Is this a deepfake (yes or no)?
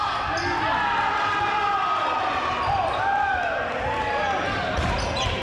no